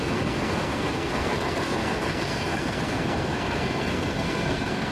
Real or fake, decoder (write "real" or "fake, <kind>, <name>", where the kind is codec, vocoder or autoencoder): fake, codec, SNAC